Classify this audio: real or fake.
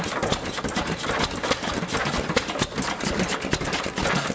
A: real